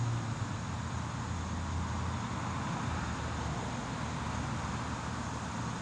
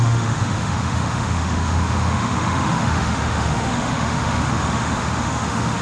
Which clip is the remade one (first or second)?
second